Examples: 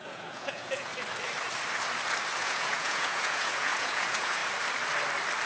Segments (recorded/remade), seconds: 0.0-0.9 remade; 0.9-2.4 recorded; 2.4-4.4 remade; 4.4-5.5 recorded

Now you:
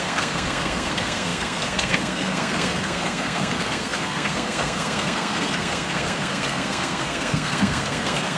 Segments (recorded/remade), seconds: 0.0-8.4 remade

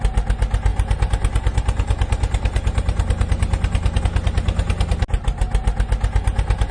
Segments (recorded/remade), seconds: 0.0-6.7 recorded

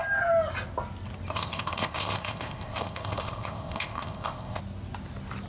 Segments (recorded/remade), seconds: 0.0-1.3 recorded; 1.3-4.6 remade; 4.6-5.5 recorded

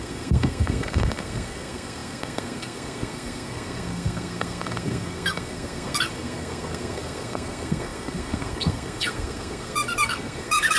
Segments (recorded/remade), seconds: 0.0-10.8 remade

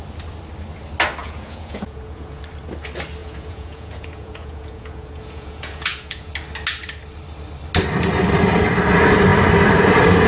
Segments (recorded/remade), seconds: 0.0-1.2 recorded; 1.2-2.4 remade; 2.4-3.2 recorded; 3.2-6.3 remade; 6.3-10.3 recorded

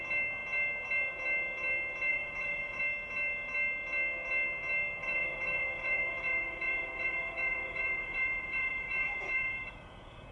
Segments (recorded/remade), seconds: 0.0-2.1 recorded; 2.1-2.8 remade; 2.8-5.0 recorded; 5.0-10.3 remade

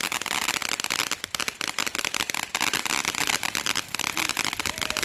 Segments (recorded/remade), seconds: 0.0-5.0 recorded